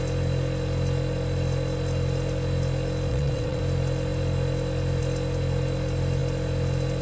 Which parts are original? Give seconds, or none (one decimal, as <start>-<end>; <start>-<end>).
0.0-3.1; 3.6-7.0